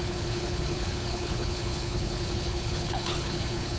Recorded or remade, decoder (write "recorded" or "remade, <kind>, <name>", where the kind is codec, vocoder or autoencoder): remade, codec, HILCodec